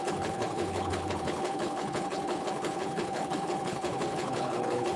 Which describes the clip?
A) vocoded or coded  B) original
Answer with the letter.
A